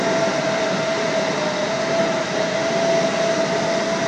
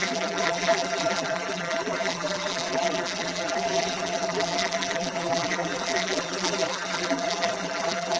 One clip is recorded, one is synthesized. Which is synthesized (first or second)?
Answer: second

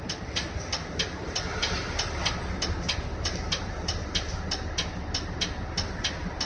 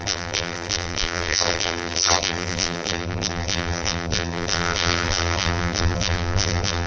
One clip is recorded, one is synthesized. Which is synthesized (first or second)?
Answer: second